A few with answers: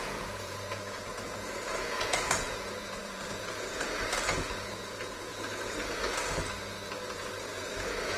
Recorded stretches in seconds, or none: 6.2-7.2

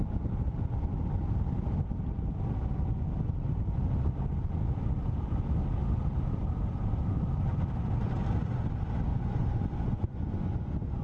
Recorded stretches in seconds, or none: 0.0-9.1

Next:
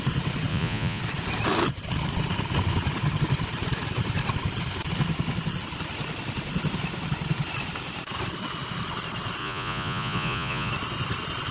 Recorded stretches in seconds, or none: 0.0-0.5; 1.0-9.4; 10.7-11.5

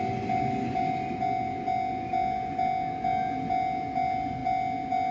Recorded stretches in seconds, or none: 0.0-5.1

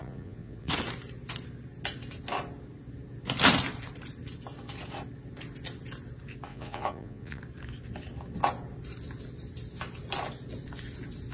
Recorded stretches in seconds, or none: 0.7-6.5; 7.4-11.3